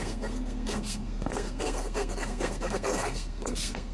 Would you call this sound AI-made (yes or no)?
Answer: yes